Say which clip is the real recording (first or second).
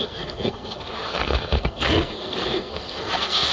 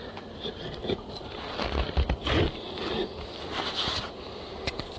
second